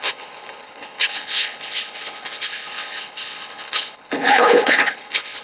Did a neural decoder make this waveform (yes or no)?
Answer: yes